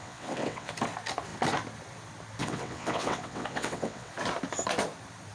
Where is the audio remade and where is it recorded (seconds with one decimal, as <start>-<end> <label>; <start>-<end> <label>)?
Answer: 0.0-0.7 remade; 0.7-2.4 recorded; 2.4-4.1 remade; 4.1-5.3 recorded